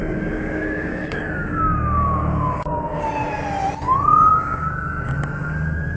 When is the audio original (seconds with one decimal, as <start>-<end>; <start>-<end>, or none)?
3.1-4.3; 5.1-6.0